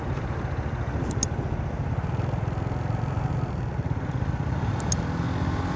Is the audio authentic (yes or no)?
yes